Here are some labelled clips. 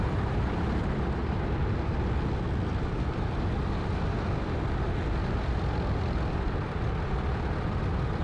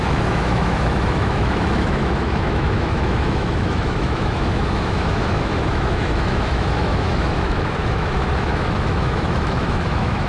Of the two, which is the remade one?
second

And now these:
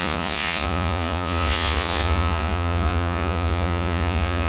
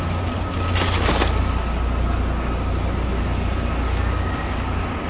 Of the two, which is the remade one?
first